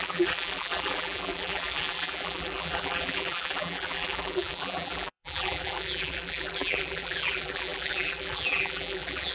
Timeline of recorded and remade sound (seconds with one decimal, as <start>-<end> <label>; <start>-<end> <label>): 0.0-9.3 remade

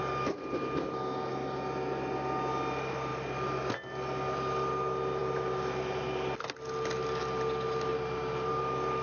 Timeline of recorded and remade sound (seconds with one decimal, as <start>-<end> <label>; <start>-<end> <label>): 0.0-9.0 recorded

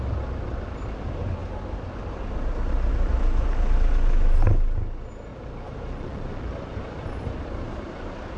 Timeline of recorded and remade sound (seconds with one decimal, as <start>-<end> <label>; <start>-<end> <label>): 0.0-5.3 recorded; 5.3-6.5 remade; 6.5-8.4 recorded